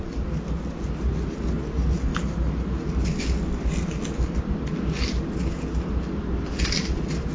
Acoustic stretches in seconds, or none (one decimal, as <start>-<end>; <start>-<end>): 0.0-7.3